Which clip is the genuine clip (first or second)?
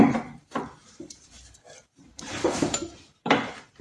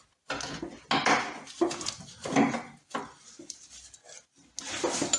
second